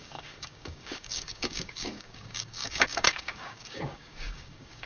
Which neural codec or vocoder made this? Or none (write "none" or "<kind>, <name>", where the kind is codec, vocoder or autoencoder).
codec, DAC